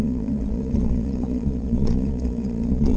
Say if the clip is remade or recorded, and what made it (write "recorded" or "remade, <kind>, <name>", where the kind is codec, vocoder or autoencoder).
remade, vocoder, Vocos